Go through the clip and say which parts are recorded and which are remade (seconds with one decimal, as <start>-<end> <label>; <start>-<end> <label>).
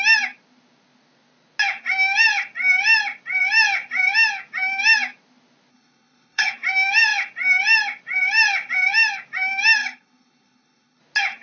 0.0-5.7 recorded; 5.7-6.5 remade; 6.5-9.8 recorded; 9.8-11.0 remade; 11.0-11.4 recorded